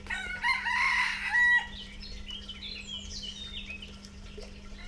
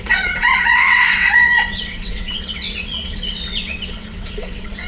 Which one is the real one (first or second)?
first